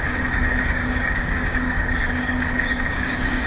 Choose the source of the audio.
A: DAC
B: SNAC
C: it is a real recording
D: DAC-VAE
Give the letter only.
A